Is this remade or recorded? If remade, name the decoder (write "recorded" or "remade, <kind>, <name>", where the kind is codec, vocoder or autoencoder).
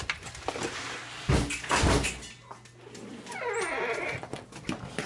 recorded